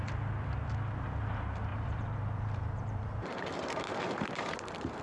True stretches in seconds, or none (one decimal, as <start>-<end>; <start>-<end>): 0.0-1.7